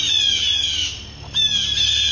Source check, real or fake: real